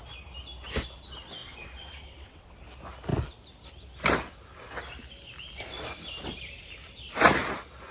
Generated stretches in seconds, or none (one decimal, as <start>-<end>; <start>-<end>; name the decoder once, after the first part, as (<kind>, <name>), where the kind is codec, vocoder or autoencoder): 1.4-2.6 (vocoder, WaveNeXt)